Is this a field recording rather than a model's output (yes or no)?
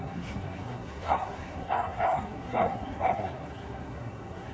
no